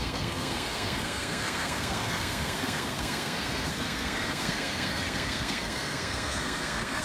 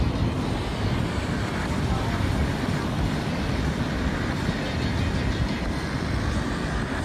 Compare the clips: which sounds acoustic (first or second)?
second